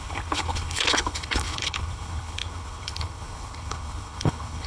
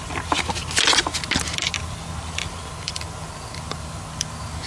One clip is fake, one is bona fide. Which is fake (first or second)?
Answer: first